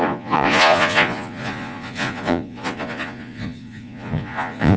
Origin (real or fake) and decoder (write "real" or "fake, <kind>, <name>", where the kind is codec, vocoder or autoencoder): fake, vocoder, Vocos